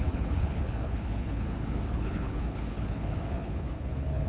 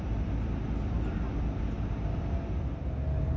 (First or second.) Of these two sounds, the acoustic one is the second